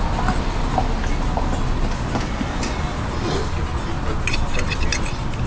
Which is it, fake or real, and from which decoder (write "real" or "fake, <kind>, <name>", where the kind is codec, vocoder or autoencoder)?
real